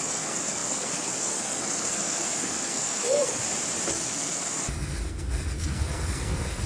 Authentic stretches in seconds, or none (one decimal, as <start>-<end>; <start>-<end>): 3.4-3.9